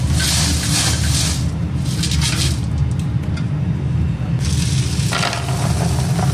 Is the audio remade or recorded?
recorded